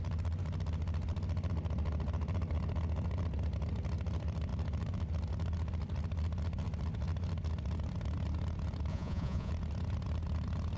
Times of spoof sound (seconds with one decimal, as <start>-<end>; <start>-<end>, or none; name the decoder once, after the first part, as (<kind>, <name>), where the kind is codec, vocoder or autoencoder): 8.9-9.5 (vocoder, Vocos)